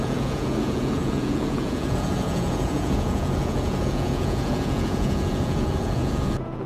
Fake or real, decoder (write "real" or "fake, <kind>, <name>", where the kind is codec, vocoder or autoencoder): fake, vocoder, Vocos